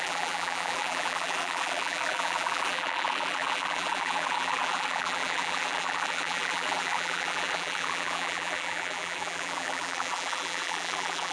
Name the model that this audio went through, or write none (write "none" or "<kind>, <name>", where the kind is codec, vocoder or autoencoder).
vocoder, BigVGAN v2